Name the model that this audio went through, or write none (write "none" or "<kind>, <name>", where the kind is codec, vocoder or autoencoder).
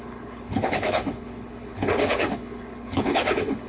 codec, HILCodec